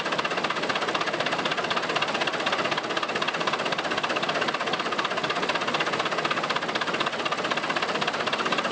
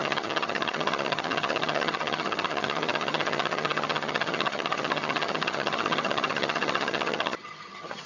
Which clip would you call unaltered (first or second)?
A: first